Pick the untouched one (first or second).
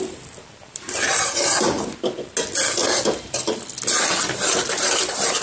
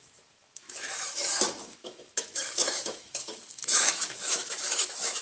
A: first